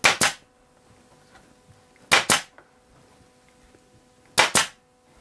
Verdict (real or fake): real